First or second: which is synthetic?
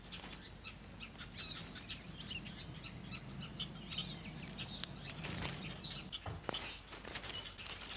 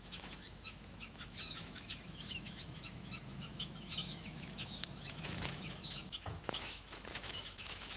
second